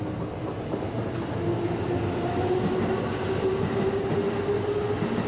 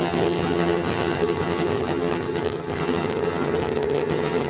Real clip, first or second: first